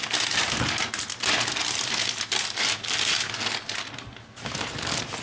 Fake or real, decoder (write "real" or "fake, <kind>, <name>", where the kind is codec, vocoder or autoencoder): real